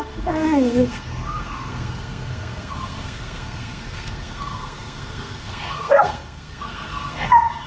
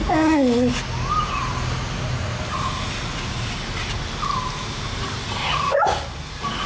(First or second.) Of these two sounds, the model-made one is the first